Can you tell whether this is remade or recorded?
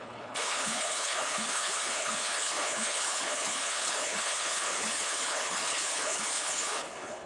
remade